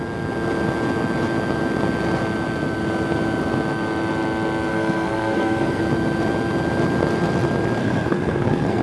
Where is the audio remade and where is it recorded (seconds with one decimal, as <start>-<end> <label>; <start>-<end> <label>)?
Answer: 0.0-4.7 recorded; 4.7-5.8 remade; 5.8-7.8 recorded; 7.8-8.8 remade